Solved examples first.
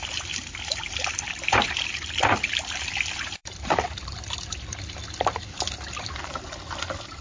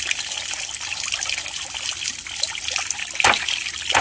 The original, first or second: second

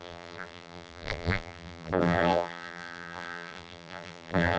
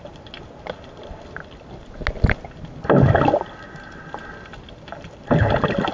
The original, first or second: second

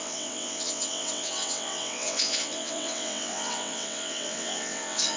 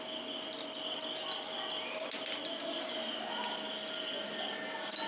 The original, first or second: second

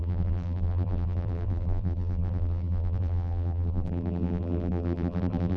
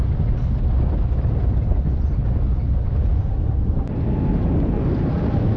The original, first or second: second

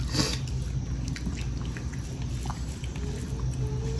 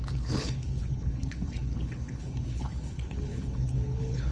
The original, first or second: first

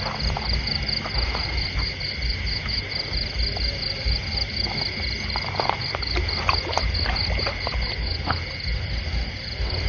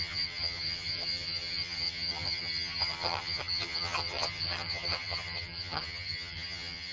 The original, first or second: first